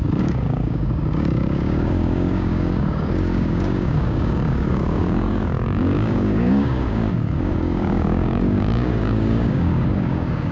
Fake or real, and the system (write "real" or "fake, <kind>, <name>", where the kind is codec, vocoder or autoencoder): fake, codec, DAC